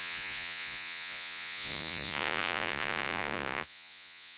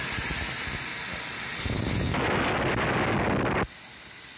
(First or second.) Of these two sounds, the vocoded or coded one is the first